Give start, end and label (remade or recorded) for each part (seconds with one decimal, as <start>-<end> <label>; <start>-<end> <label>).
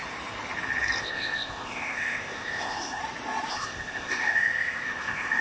0.0-1.0 recorded; 1.0-3.0 remade; 3.0-3.5 recorded; 3.5-5.4 remade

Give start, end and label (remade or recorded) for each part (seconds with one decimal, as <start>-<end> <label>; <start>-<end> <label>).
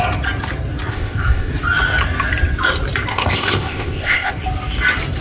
0.0-0.9 recorded; 0.9-1.5 remade; 1.5-3.1 recorded; 3.1-4.3 remade; 4.3-5.2 recorded